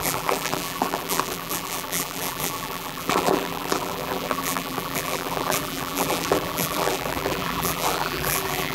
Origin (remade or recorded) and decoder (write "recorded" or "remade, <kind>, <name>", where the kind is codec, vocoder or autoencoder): remade, vocoder, BigVGAN v2